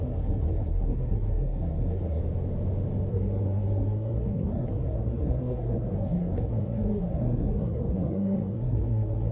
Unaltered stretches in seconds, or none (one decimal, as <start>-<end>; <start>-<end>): 2.2-3.1